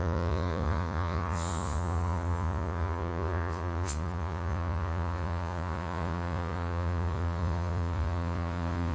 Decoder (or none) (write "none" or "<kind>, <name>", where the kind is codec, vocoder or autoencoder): vocoder, Vocos